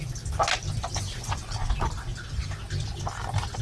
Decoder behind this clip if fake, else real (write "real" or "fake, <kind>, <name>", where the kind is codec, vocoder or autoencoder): real